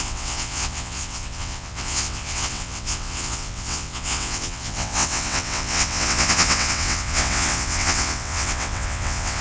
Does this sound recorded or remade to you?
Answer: remade